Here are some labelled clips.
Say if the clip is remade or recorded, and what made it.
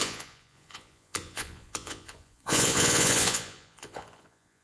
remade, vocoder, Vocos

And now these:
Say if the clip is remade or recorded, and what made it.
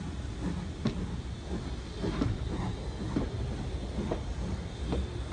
recorded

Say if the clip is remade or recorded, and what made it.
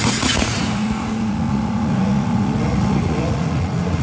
remade, vocoder, Vocos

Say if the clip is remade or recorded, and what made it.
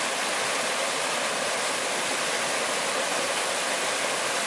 recorded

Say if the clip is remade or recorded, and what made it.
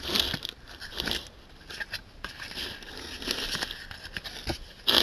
recorded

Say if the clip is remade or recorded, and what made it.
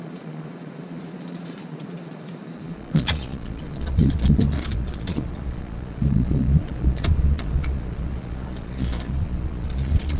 remade, vocoder, Vocos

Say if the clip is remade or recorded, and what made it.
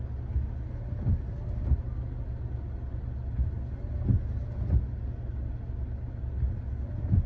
recorded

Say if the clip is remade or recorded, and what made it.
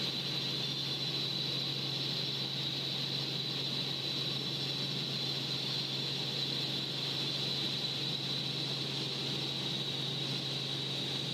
recorded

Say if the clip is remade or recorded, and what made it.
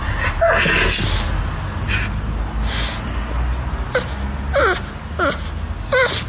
recorded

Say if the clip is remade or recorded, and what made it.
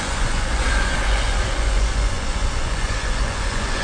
remade, vocoder, Vocos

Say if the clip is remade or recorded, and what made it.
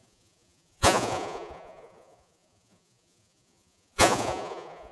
remade, vocoder, Vocos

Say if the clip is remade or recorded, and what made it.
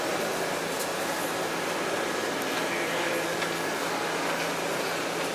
recorded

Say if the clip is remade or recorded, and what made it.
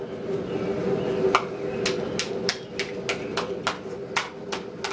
recorded